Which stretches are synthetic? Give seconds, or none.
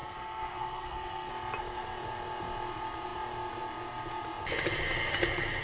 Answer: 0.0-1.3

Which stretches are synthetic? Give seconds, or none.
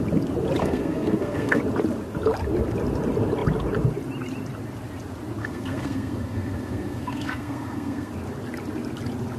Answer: 0.6-1.6; 5.4-8.1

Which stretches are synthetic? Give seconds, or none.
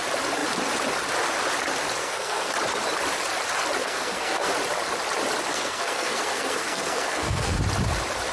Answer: 2.0-2.5; 3.8-4.5; 5.5-7.6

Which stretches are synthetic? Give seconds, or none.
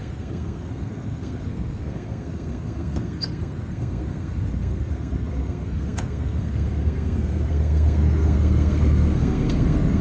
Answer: 0.0-10.0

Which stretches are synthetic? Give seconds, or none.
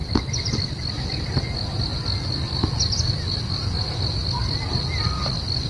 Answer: none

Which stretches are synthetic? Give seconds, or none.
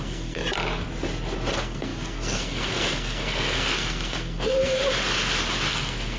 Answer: 0.0-0.4; 1.5-4.8; 5.7-6.2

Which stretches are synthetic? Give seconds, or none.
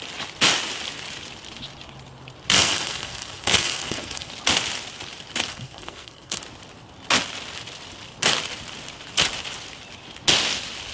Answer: 2.5-4.3; 5.5-6.4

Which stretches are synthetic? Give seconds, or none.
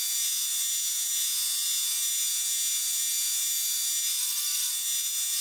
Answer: 4.2-4.7